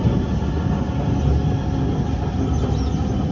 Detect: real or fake real